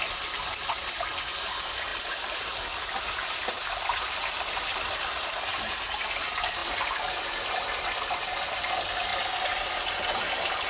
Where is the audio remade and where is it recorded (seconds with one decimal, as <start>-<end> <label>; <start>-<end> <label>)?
0.0-1.9 recorded; 1.9-3.6 remade; 3.6-10.7 recorded